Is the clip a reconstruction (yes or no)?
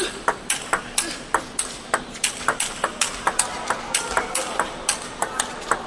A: no